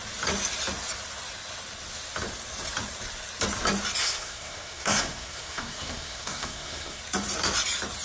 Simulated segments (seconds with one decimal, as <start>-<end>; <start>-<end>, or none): 4.0-7.0